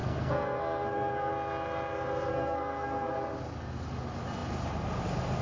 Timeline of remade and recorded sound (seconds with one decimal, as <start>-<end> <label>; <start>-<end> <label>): 0.0-1.3 remade; 1.3-2.3 recorded; 2.3-3.1 remade; 3.1-5.4 recorded